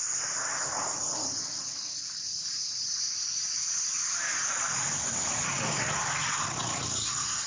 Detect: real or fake real